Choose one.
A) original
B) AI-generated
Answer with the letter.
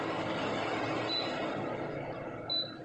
A